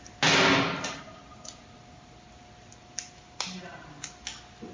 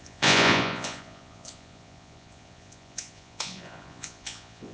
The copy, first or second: second